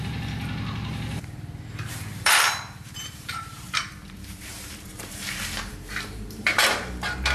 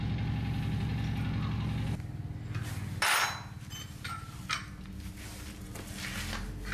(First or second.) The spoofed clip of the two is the first